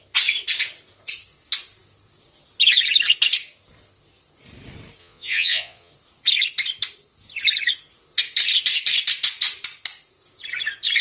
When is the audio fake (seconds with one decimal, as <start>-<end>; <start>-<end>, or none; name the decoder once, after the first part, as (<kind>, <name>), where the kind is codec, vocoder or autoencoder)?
5.0-5.9 (vocoder, Vocos)